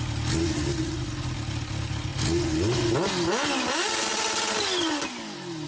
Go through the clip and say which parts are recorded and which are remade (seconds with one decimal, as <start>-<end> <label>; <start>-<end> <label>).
0.0-5.7 recorded